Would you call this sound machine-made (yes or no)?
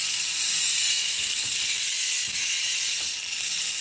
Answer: no